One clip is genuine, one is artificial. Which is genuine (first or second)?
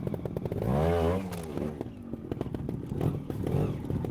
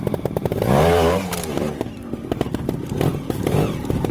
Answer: first